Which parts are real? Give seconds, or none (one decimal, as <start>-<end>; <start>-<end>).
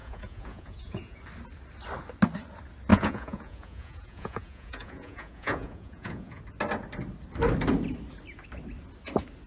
1.2-2.9; 6.4-9.5